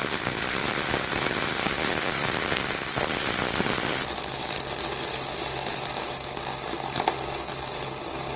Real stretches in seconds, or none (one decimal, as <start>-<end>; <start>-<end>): 0.0-8.4